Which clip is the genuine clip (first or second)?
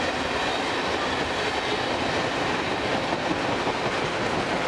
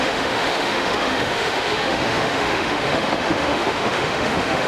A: first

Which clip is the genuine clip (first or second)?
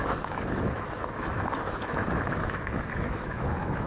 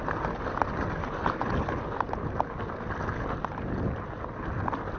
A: second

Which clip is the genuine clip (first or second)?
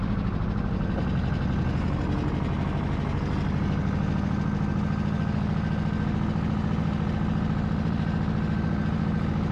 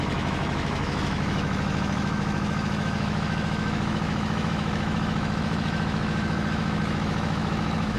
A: first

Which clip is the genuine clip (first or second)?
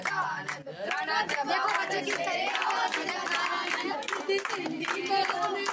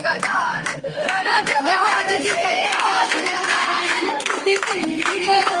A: first